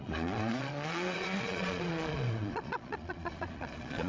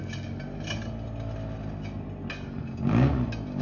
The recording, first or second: second